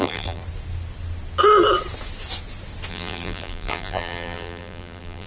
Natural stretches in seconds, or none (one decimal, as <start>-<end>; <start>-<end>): 0.4-2.9